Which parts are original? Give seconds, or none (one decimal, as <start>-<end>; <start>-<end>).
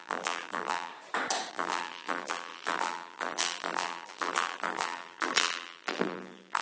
0.9-1.5